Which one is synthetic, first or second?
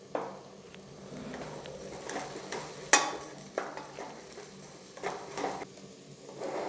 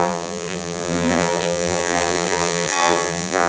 second